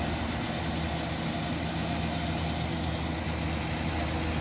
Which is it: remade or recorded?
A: recorded